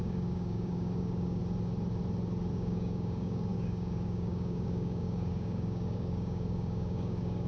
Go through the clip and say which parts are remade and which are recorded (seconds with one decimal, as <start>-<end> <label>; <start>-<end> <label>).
0.0-1.4 remade; 1.4-2.5 recorded; 2.5-7.5 remade